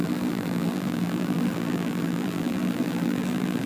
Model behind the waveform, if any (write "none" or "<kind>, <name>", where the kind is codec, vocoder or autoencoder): vocoder, BigVGAN v2